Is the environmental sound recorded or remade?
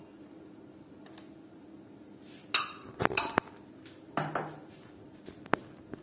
recorded